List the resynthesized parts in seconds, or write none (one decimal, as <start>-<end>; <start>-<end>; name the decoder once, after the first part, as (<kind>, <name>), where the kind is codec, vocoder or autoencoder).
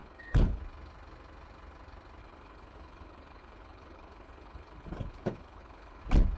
0.0-0.6 (codec, HILCodec); 2.2-6.0